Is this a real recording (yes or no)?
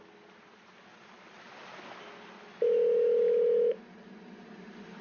yes